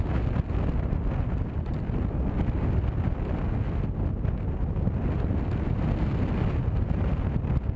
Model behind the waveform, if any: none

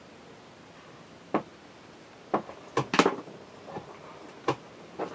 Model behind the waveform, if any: none